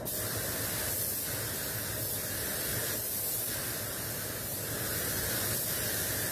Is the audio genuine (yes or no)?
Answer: yes